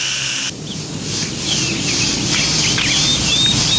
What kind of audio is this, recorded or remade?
recorded